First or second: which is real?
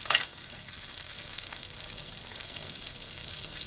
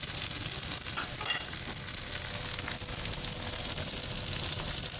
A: second